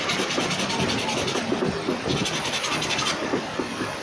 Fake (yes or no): no